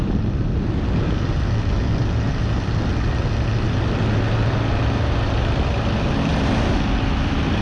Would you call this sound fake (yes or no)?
no